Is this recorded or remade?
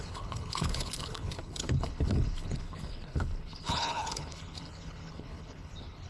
remade